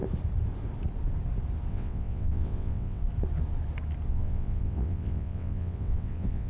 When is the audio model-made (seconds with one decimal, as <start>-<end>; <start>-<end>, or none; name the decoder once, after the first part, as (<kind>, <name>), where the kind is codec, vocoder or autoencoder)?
1.7-3.0 (vocoder, WaveNeXt); 4.1-6.5